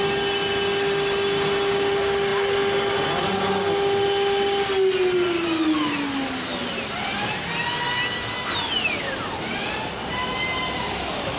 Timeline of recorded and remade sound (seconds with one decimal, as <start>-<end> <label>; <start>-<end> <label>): 0.0-11.4 recorded